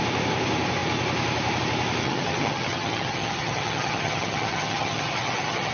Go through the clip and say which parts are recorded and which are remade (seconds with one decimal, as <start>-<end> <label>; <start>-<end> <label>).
0.0-2.0 recorded; 2.0-5.7 remade